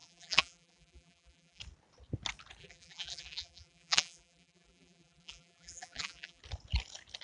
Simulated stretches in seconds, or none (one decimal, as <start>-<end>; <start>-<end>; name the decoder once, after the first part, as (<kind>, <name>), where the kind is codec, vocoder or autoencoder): 0.0-1.6 (vocoder, BigVGAN v2); 2.6-6.4